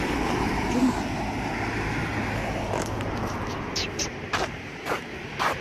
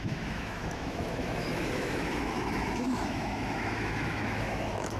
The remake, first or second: second